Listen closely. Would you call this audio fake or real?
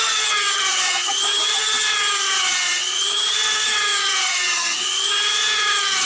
fake